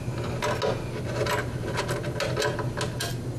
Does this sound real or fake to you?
real